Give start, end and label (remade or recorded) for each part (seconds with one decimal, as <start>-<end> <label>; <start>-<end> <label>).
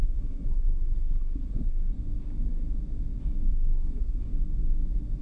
0.0-2.0 remade; 2.0-3.5 recorded; 3.5-4.2 remade; 4.2-5.2 recorded